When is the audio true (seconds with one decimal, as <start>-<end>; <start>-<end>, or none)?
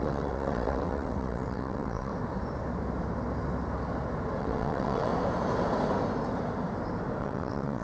2.1-4.4; 5.1-7.2